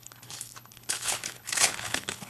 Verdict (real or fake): fake